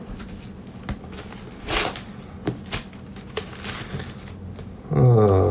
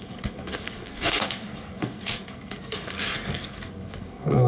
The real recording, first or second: first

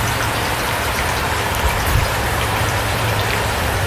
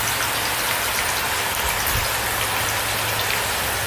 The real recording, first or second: second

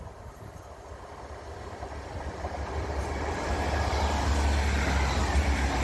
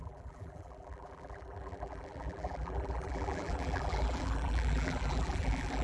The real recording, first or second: first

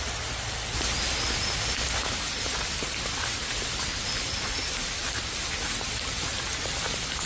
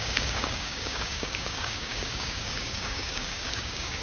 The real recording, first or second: first